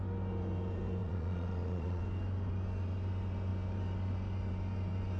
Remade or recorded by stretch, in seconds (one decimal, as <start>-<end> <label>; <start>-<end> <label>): 0.0-1.0 recorded; 1.0-2.0 remade; 2.0-5.2 recorded